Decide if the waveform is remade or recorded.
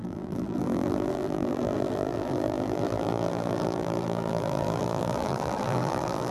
remade